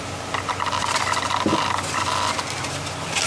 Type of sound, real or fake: real